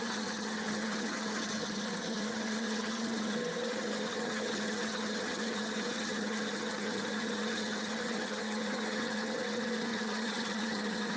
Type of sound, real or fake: fake